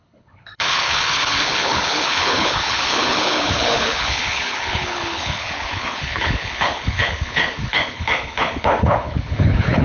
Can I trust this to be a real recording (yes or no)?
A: no